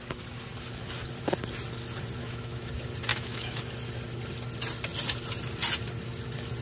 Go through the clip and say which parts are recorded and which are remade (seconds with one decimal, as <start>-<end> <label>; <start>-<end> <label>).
0.0-2.2 recorded; 2.2-2.7 remade; 2.7-3.1 recorded; 3.1-3.6 remade; 3.6-6.6 recorded